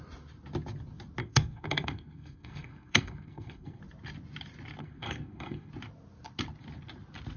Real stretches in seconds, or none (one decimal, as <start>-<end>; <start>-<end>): 0.0-1.2; 3.8-4.8; 5.7-7.4